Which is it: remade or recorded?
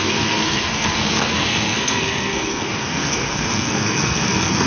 remade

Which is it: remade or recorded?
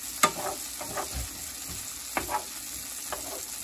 recorded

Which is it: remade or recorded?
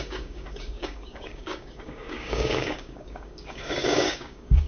remade